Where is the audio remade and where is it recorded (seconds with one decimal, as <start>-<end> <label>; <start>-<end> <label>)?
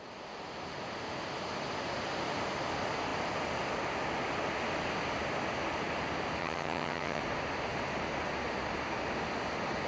0.0-6.4 recorded; 6.4-7.2 remade; 7.2-9.9 recorded